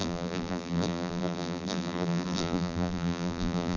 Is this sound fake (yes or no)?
yes